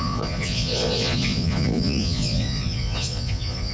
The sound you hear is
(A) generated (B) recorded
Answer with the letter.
A